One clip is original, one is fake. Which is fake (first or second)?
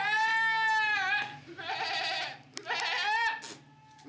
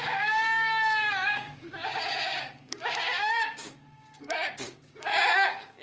second